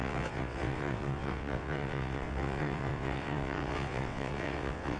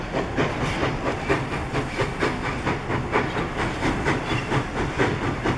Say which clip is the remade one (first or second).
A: first